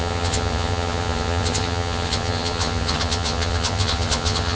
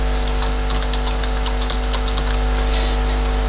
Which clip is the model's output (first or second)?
first